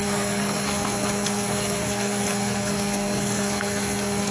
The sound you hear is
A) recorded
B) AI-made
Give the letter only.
B